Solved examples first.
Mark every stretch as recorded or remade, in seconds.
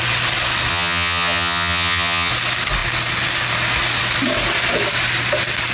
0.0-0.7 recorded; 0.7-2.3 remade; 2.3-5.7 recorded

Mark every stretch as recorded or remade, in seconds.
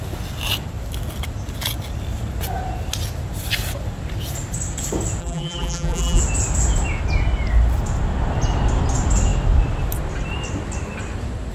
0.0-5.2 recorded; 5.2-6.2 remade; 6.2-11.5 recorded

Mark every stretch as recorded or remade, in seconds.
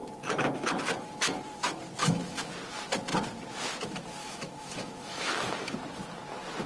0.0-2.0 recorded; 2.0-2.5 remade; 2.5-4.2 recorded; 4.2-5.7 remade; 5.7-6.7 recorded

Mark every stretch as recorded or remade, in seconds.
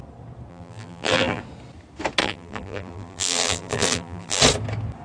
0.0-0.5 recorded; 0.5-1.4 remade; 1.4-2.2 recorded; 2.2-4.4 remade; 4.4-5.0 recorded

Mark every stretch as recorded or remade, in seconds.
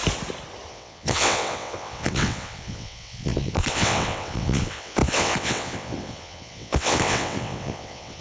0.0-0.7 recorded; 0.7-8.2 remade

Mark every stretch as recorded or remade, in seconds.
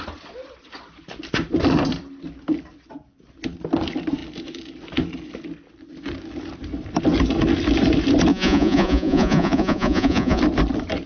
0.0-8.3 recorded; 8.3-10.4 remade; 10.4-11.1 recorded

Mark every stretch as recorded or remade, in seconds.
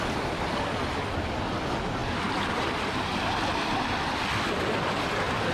0.0-5.5 recorded